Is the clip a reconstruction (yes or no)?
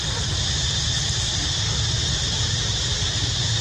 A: no